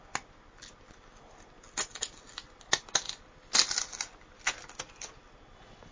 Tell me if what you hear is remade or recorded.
recorded